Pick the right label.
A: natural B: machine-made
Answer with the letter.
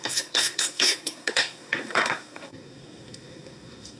B